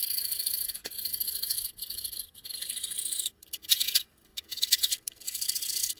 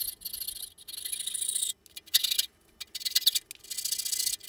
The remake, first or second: first